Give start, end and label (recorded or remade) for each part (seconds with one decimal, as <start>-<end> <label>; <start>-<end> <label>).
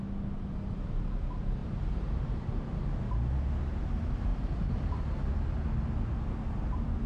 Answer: 0.0-1.6 recorded; 1.6-3.1 remade; 3.1-4.3 recorded; 4.3-4.9 remade; 4.9-7.1 recorded